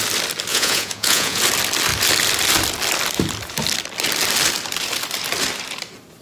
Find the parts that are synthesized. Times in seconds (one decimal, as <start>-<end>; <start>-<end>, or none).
0.5-1.4